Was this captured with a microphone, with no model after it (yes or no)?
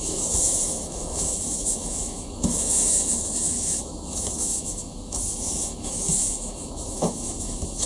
no